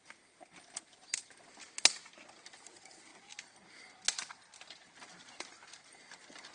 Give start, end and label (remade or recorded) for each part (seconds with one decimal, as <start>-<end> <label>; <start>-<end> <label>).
0.0-6.5 recorded